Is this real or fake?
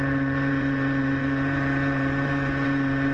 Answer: fake